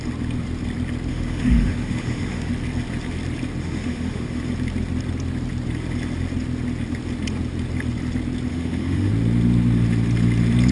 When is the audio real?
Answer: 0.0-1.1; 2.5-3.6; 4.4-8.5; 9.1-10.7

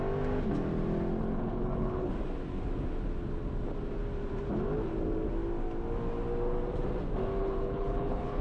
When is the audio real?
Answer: 0.0-1.2; 2.1-7.4